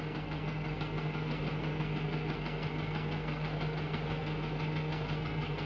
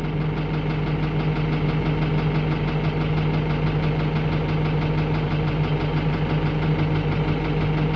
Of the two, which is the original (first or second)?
second